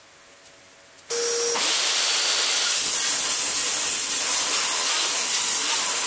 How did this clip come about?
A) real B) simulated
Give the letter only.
A